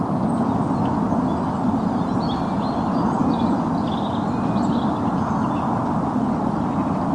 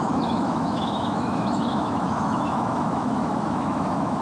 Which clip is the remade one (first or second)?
second